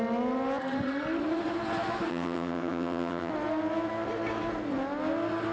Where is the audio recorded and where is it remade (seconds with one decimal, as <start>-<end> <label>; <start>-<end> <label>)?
0.0-2.1 recorded; 2.1-3.3 remade; 3.3-5.5 recorded